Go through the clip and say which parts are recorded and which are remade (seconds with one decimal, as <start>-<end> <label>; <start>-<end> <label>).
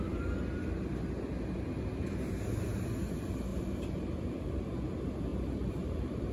0.0-3.5 recorded; 3.5-4.8 remade; 4.8-5.3 recorded; 5.3-6.3 remade